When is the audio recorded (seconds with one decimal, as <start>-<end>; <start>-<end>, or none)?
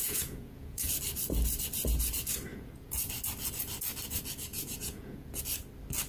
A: 0.9-2.5; 3.1-4.5; 5.4-6.1